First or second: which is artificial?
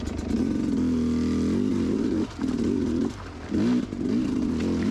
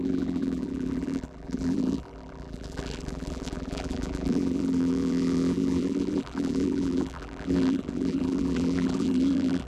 second